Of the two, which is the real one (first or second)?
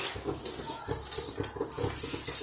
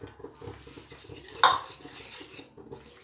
second